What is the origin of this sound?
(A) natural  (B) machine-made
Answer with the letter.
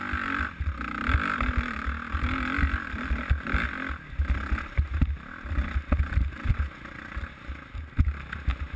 A